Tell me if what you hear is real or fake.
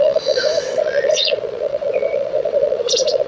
fake